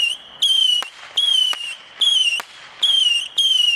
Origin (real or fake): real